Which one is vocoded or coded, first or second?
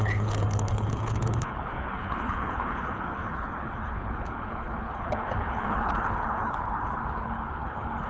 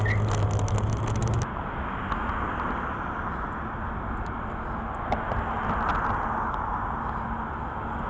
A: first